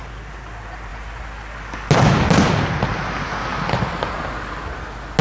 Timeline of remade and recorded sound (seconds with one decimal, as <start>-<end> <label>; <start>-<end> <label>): 0.0-5.2 recorded